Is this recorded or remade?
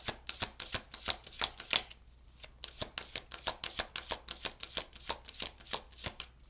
recorded